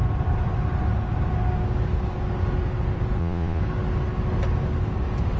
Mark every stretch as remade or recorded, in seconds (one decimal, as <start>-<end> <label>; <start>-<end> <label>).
0.0-3.2 recorded; 3.2-3.6 remade; 3.6-5.4 recorded